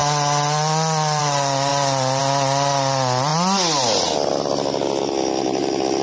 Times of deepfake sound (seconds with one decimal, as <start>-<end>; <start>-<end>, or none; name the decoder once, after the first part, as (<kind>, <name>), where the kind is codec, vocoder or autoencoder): none